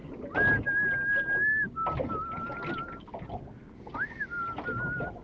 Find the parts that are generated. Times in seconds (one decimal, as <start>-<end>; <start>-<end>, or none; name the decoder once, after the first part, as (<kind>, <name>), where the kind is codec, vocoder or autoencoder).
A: none